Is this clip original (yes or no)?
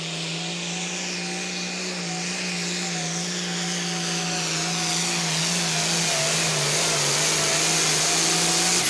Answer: yes